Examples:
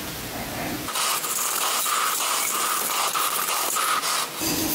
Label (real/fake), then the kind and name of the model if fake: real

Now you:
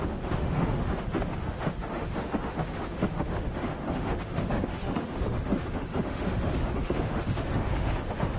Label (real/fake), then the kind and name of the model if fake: fake, autoencoder, DAC-VAE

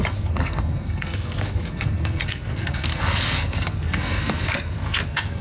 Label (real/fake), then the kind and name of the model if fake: fake, codec, SNAC